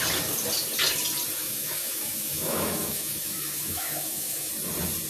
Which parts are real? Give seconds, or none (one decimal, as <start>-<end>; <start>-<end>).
0.0-1.4; 4.5-5.1

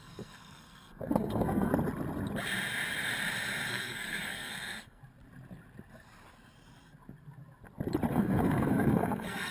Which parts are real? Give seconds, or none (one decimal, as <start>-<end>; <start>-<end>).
1.7-3.7; 5.0-8.1

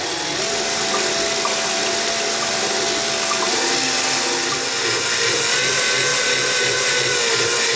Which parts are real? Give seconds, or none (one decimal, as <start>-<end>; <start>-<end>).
0.0-7.8

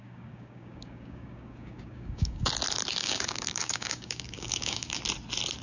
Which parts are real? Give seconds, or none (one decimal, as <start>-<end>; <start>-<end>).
2.5-3.0; 5.0-5.6

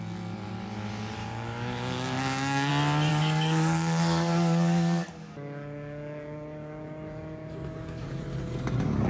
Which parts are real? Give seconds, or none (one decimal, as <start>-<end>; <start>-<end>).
0.0-1.2; 2.7-3.1; 8.2-9.1

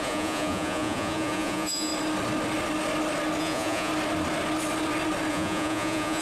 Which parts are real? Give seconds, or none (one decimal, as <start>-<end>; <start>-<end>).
1.9-3.4; 3.9-5.3

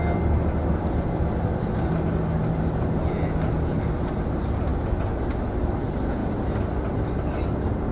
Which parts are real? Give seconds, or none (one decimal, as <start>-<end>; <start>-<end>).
0.0-6.2; 6.7-7.9

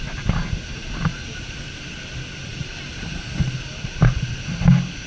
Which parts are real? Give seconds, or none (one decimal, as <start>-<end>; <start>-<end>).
0.0-2.5; 3.0-5.1